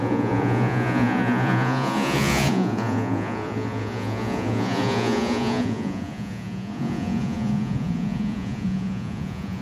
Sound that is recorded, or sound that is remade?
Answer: remade